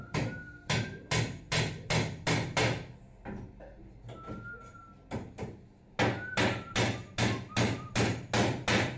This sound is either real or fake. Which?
real